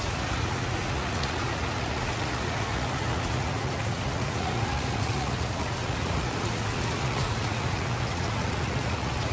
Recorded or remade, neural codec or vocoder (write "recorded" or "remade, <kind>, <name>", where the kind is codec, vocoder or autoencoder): remade, vocoder, Vocos